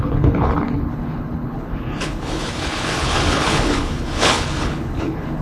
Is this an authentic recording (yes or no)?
no